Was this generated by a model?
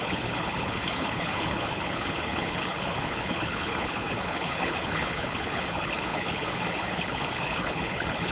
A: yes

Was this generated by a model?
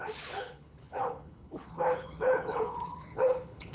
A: yes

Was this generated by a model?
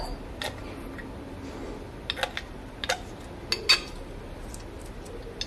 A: no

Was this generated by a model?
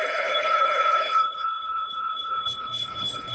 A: yes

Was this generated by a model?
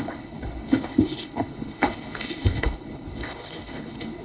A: yes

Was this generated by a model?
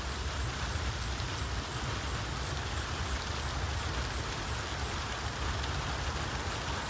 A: no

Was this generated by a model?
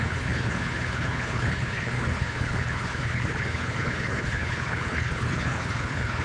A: yes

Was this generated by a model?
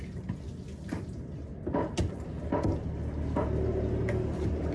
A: no